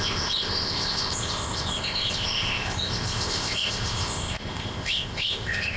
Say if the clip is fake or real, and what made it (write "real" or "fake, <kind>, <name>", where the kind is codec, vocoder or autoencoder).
fake, codec, ZipCodec